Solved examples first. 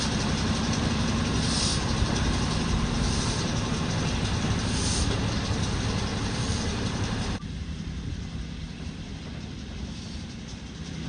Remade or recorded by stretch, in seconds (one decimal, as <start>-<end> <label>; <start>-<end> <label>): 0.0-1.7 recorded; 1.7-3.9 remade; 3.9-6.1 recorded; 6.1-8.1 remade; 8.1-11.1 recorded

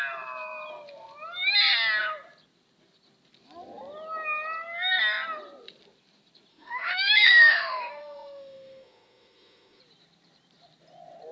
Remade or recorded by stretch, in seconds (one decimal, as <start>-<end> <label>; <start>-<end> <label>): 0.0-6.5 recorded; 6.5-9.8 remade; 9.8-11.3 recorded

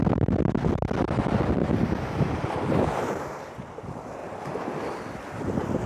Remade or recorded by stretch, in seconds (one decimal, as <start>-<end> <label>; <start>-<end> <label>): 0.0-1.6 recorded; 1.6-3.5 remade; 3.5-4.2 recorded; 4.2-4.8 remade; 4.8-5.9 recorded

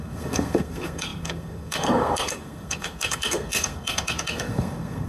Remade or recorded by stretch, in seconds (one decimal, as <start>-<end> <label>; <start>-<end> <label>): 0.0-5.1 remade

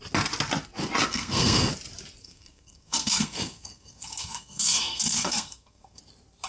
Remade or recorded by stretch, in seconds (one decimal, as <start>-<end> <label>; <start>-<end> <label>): 0.0-1.1 recorded; 1.1-1.7 remade; 1.7-2.2 recorded; 2.2-6.0 remade; 6.0-6.5 recorded